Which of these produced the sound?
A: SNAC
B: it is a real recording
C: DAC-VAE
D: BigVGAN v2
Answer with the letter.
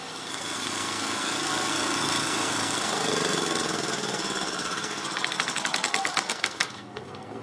A